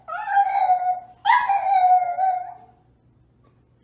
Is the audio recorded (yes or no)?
yes